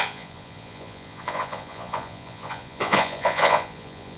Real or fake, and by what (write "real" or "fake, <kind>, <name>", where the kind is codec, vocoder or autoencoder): fake, vocoder, Vocos